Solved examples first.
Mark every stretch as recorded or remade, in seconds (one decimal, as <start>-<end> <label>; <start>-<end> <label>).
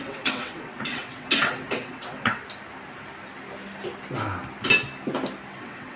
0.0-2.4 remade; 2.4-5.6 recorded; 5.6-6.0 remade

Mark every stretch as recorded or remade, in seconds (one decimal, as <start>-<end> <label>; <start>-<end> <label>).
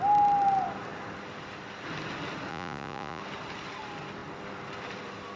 0.0-2.5 recorded; 2.5-3.2 remade; 3.2-5.4 recorded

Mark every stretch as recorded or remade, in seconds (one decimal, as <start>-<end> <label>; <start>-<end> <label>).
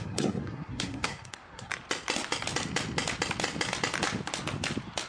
0.0-1.7 remade; 1.7-5.1 recorded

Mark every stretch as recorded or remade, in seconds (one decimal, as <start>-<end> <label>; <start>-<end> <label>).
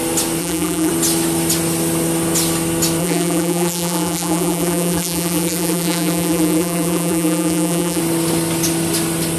0.0-0.4 recorded; 0.4-0.9 remade; 0.9-3.0 recorded; 3.0-8.0 remade; 8.0-9.4 recorded